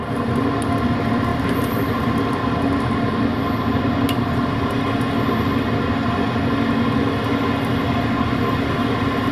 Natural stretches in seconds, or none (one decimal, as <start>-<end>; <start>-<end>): 0.0-1.3; 2.4-9.3